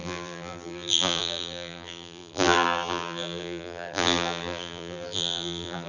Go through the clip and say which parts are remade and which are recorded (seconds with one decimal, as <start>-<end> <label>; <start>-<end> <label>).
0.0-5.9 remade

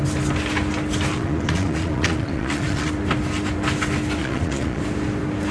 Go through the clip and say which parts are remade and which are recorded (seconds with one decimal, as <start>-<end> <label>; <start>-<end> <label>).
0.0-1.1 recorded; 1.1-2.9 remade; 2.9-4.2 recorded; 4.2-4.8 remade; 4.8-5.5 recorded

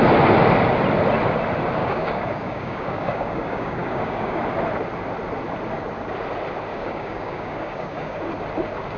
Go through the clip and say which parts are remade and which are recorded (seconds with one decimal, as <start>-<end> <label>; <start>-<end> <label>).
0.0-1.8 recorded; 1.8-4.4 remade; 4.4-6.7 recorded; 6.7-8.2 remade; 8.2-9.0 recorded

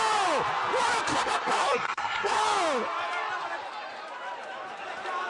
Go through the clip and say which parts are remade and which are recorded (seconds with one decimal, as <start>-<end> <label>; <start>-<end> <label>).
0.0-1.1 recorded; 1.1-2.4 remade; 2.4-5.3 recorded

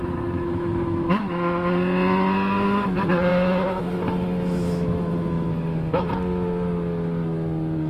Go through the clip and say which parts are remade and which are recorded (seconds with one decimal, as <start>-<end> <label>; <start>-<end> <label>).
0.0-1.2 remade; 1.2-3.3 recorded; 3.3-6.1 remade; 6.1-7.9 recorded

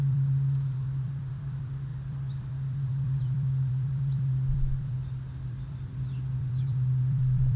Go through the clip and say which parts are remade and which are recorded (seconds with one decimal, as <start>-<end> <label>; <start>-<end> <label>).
0.0-7.6 remade